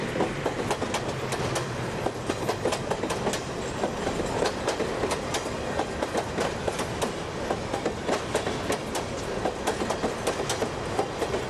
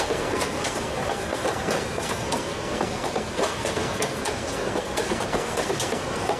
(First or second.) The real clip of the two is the first